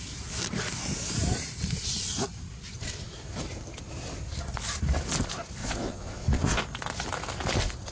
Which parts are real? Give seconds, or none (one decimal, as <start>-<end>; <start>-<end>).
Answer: 0.0-5.6; 6.6-7.9